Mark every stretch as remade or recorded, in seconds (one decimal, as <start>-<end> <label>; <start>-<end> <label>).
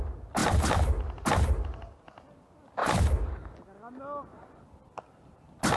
0.0-5.8 recorded